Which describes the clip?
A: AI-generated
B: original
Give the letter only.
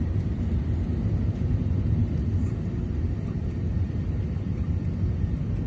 B